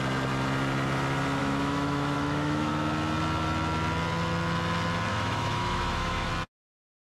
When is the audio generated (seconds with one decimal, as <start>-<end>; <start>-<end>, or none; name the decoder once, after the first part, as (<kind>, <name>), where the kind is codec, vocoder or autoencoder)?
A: 1.4-2.7 (autoencoder, DAC-VAE); 5.1-6.3